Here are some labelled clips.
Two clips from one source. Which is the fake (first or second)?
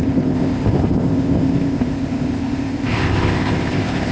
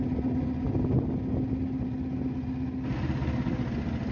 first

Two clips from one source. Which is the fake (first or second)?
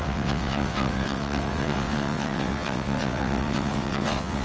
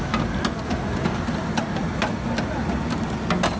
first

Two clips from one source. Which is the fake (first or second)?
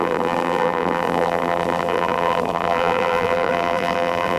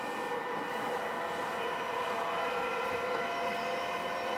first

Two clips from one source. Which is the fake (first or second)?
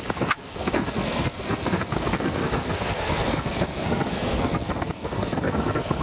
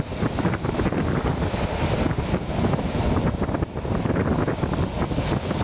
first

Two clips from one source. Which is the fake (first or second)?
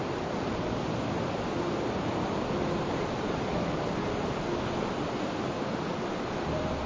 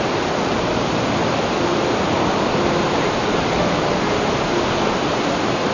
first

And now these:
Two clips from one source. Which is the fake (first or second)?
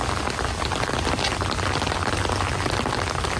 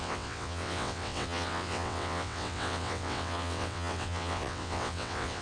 second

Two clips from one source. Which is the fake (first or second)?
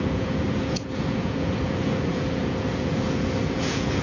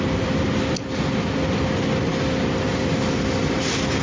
first